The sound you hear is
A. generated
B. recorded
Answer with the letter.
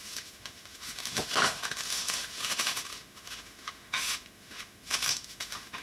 A